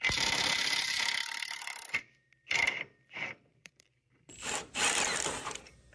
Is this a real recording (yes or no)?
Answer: no